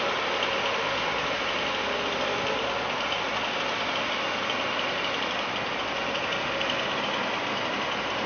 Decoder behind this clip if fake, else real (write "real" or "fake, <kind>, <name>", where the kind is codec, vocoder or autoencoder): real